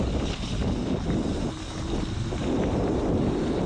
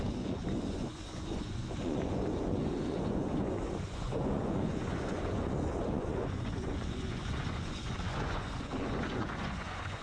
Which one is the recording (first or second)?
first